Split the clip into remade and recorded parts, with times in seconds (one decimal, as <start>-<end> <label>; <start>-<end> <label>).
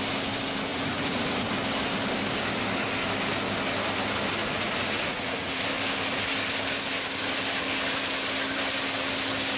0.0-0.7 recorded; 0.7-1.5 remade; 1.5-4.4 recorded; 4.4-5.6 remade; 5.6-9.6 recorded